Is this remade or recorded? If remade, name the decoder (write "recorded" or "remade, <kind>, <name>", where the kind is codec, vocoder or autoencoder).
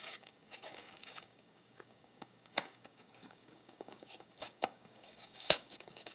remade, codec, DAC